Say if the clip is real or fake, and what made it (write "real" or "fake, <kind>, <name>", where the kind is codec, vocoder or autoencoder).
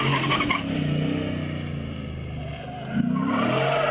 real